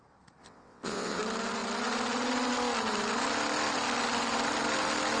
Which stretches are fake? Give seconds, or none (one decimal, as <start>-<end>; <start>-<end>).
0.4-1.2